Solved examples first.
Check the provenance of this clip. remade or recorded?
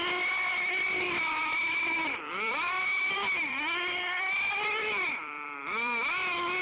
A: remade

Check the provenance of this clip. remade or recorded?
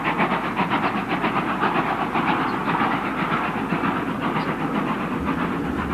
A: recorded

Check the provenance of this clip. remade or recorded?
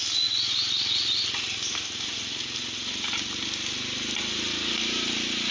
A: recorded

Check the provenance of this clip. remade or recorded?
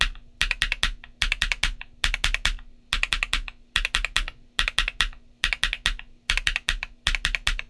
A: recorded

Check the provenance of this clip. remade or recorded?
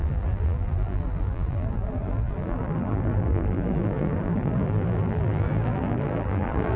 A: remade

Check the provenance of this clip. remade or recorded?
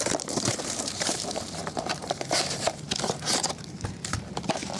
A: remade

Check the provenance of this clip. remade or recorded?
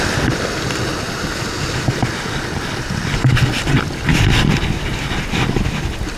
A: recorded